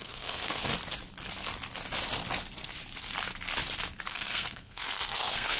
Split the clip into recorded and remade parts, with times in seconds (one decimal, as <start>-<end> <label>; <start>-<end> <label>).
0.0-0.7 remade; 0.7-4.1 recorded; 4.1-5.6 remade